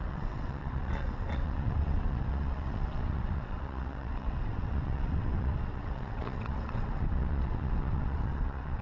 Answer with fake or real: fake